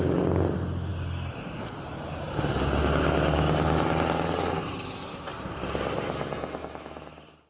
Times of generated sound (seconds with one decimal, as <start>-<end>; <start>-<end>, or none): 5.3-6.6